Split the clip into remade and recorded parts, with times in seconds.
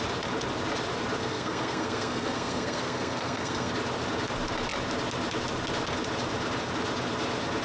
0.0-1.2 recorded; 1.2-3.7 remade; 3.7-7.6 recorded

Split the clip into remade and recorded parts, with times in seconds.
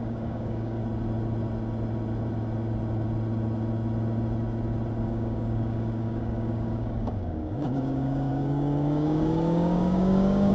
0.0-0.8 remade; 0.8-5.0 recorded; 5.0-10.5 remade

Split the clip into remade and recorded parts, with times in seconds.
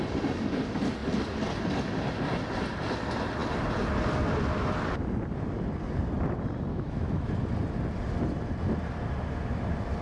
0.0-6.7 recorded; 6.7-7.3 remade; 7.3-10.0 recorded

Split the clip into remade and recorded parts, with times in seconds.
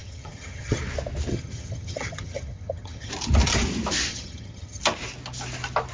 0.0-0.8 remade; 0.8-1.3 recorded; 1.3-3.1 remade; 3.1-4.1 recorded; 4.1-4.8 remade; 4.8-5.9 recorded